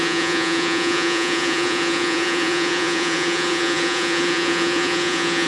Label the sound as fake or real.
fake